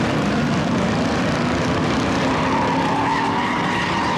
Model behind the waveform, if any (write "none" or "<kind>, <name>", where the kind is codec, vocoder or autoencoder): none